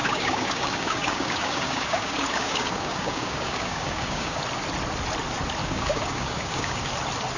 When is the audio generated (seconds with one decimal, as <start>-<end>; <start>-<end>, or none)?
0.0-4.4; 5.6-6.9